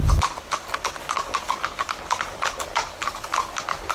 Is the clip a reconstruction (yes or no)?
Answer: no